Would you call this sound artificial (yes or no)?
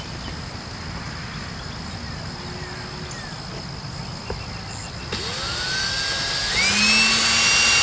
no